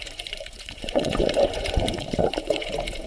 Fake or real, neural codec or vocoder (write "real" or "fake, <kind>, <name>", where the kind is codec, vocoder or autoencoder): fake, vocoder, Vocos